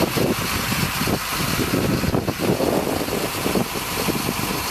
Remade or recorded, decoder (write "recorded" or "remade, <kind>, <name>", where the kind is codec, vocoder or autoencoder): recorded